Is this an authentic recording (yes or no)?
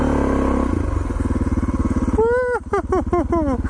yes